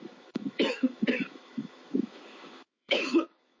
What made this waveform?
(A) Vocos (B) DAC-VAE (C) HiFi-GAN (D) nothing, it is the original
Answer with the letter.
B